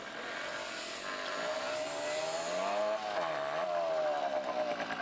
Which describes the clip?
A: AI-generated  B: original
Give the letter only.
B